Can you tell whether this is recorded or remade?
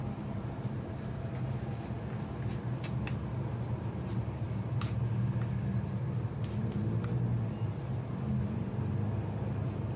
recorded